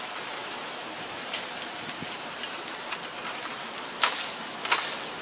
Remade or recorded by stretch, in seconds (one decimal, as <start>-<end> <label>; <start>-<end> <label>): 0.0-0.4 recorded; 0.4-3.5 remade; 3.5-5.2 recorded